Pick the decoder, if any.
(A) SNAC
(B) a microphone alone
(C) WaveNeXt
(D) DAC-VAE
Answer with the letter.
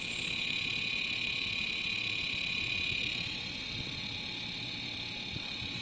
C